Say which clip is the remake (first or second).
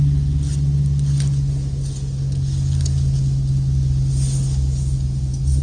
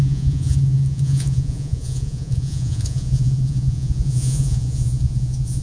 second